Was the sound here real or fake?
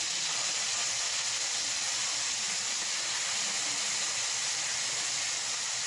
real